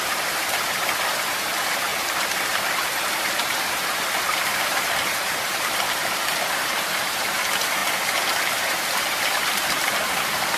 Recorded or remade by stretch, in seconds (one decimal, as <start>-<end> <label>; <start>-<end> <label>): 0.0-7.8 remade; 7.8-9.0 recorded; 9.0-10.6 remade